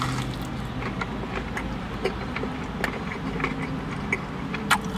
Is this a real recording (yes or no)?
yes